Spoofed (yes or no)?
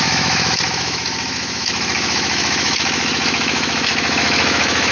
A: yes